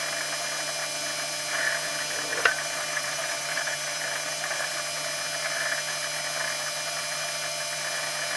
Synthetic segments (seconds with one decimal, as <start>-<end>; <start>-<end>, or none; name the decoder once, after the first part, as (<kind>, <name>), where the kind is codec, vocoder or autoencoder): 2.3-4.7 (vocoder, BigVGAN v2)